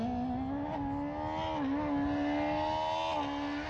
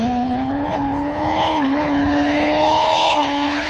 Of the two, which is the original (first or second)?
first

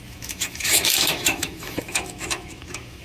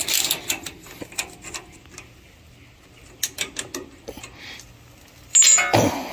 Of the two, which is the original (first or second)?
second